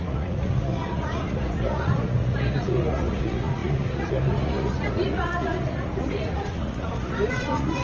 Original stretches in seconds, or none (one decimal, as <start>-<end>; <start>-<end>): none